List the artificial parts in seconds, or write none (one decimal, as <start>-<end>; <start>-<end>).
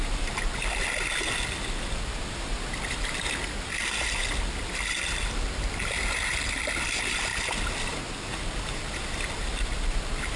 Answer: none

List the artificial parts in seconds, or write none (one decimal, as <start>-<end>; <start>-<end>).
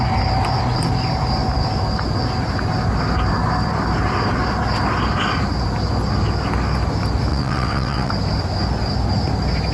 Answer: 7.3-8.1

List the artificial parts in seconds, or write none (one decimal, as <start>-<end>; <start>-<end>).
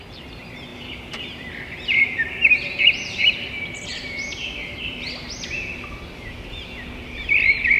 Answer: 0.7-5.1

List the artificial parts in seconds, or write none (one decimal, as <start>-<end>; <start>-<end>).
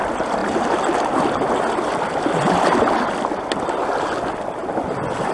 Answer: none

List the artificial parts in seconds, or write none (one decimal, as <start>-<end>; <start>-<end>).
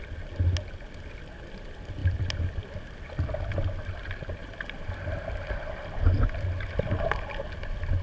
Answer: 2.0-2.6; 4.4-5.3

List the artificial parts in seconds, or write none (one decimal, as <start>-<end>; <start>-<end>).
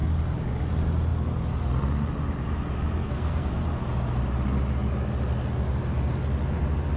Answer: 3.0-3.5